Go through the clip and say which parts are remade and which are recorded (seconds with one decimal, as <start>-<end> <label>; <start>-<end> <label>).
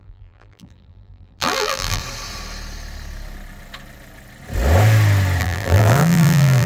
0.0-2.0 remade; 2.0-5.4 recorded; 5.4-6.7 remade